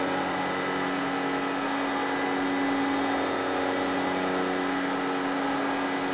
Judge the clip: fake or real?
real